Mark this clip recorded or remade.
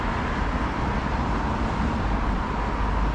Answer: recorded